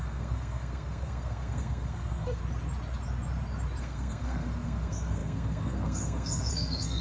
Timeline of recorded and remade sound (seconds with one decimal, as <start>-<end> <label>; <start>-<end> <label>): 0.0-2.4 remade; 2.4-3.8 recorded; 3.8-7.0 remade

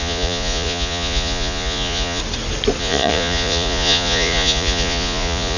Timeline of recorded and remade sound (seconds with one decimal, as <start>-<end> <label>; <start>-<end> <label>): 0.0-2.2 remade; 2.2-2.8 recorded; 2.8-5.6 remade

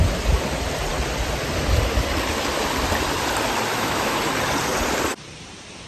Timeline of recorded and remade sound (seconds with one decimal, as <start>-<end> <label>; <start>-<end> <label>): 0.0-3.7 recorded; 3.7-4.2 remade; 4.2-5.9 recorded

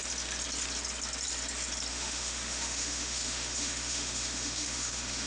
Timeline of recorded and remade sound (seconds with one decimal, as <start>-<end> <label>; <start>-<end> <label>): 0.0-1.9 recorded; 1.9-5.3 remade

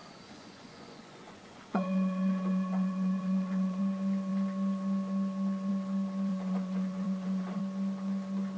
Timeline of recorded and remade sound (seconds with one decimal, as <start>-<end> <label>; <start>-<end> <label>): 0.0-3.8 remade; 3.8-6.3 recorded; 6.3-7.6 remade; 7.6-8.6 recorded

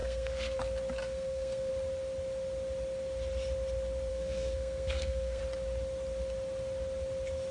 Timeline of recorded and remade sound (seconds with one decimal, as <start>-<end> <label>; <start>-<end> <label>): 0.0-0.6 remade; 0.6-1.0 recorded; 1.0-1.7 remade; 1.7-4.1 recorded; 4.1-5.4 remade; 5.4-7.5 recorded

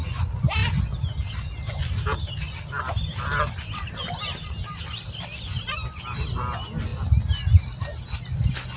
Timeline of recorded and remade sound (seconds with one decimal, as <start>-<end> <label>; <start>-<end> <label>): 0.0-8.8 recorded